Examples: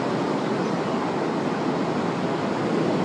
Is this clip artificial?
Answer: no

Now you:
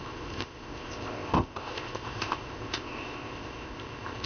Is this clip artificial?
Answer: yes